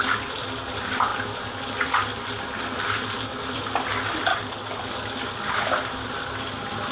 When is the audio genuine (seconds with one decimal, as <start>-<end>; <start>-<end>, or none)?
0.0-4.3; 4.8-6.9